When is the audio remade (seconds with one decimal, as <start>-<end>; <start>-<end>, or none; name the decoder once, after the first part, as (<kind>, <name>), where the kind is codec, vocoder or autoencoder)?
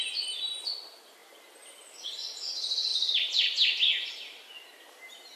none